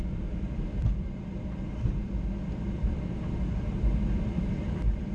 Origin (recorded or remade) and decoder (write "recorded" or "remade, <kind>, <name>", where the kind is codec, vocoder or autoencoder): remade, vocoder, BigVGAN v2